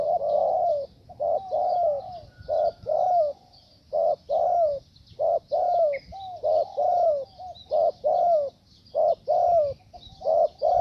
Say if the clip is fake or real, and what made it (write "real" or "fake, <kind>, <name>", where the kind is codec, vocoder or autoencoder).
real